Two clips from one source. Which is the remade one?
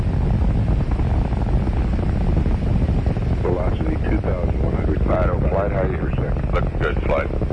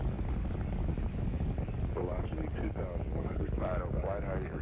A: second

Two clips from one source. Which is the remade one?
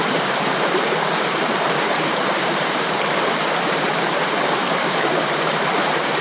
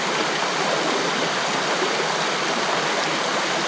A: first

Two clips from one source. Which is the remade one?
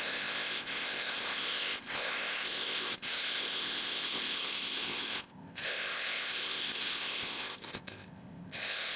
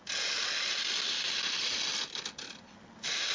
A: first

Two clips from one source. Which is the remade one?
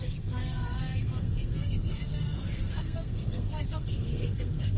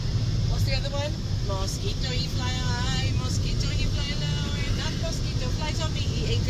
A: first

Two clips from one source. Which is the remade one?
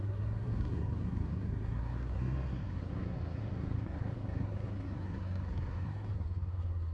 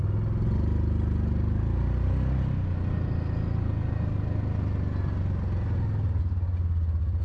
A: first